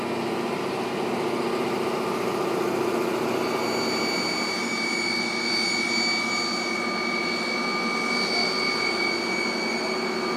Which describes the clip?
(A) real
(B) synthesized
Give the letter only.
A